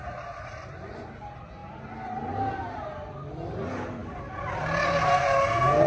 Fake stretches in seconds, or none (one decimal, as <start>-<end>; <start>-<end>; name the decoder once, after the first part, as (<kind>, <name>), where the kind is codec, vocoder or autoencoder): none